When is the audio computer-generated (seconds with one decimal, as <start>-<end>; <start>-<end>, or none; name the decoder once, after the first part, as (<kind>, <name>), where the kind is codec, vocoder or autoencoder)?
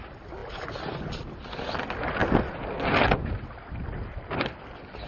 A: none